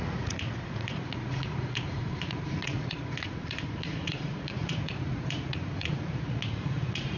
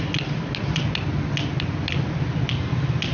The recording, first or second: second